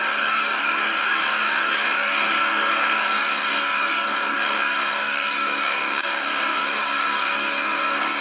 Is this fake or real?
fake